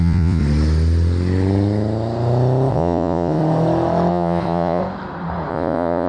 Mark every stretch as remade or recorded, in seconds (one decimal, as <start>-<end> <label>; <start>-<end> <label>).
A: 0.0-0.4 remade; 0.4-2.7 recorded; 2.7-3.4 remade; 3.4-4.1 recorded; 4.1-4.8 remade; 4.8-5.5 recorded; 5.5-6.1 remade